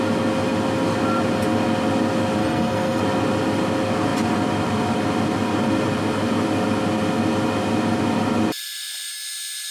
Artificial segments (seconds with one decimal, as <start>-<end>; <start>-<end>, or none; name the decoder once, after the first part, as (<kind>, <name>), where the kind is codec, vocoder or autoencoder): 2.4-3.0 (codec, SNAC)